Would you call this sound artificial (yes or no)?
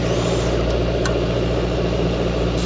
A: no